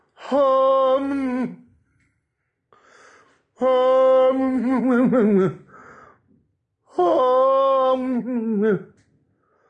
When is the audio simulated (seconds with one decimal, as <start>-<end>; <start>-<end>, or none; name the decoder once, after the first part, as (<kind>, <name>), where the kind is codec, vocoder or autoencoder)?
none